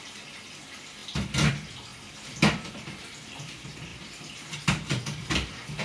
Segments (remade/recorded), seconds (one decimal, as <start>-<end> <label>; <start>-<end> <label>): 0.0-1.0 remade; 1.0-1.5 recorded; 1.5-1.9 remade; 1.9-2.5 recorded; 2.5-5.8 remade